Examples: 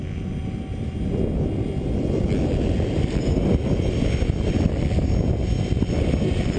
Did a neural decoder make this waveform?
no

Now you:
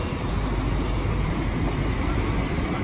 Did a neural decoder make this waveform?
no